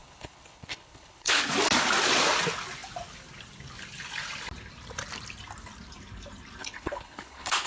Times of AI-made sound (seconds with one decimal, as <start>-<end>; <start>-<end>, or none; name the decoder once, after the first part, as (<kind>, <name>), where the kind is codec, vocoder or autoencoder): 0.0-1.4 (codec, HILCodec); 6.6-7.7